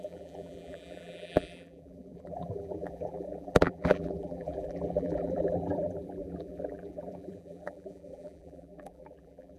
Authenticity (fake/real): fake